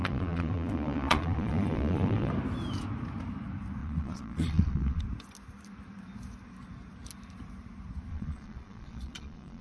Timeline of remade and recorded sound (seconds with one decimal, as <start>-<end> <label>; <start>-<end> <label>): 0.0-2.3 remade; 2.3-3.8 recorded; 3.8-5.0 remade; 5.0-8.1 recorded; 8.1-9.6 remade